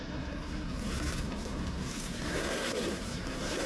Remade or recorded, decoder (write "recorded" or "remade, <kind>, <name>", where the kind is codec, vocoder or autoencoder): remade, codec, SNAC